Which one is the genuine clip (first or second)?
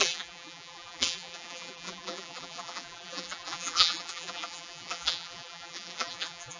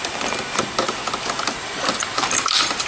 second